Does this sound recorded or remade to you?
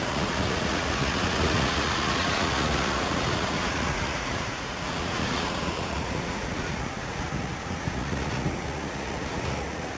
remade